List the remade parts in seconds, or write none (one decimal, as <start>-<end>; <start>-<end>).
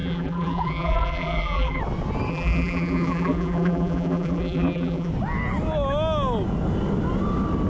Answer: 0.0-1.8; 2.3-5.1